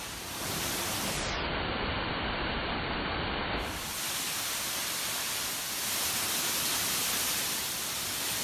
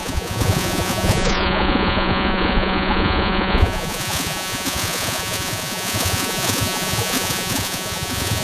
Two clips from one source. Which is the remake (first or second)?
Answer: second